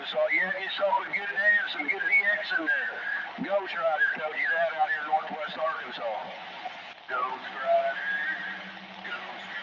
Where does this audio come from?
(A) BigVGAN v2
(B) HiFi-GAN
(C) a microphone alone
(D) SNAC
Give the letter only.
C